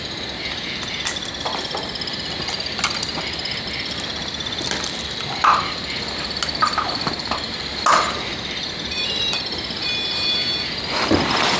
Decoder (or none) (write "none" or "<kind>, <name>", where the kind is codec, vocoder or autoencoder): none